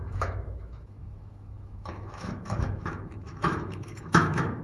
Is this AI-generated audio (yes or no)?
yes